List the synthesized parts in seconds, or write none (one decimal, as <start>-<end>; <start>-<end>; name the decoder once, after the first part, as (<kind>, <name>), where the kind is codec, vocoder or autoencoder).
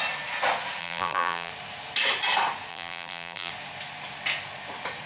0.8-1.5 (vocoder, BigVGAN v2); 2.7-3.5